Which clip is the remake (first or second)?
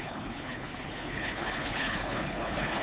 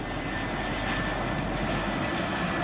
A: first